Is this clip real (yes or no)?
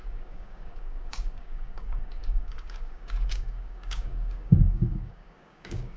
no